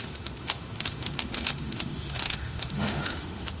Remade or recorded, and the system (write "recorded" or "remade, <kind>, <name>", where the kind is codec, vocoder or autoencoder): remade, autoencoder, DAC-VAE